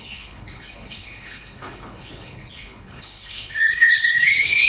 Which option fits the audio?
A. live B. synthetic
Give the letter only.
B